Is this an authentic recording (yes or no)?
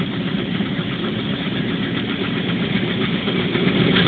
no